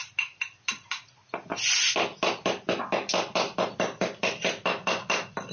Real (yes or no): yes